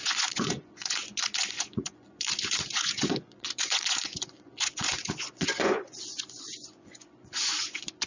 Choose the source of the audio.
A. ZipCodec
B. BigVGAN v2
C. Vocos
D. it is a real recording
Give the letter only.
C